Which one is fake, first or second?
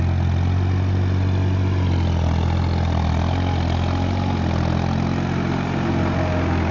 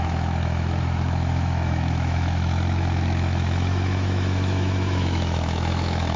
second